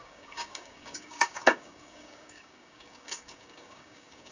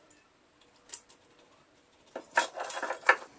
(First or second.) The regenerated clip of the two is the first